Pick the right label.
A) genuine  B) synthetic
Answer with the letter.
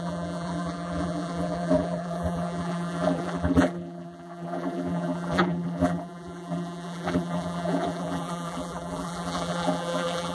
B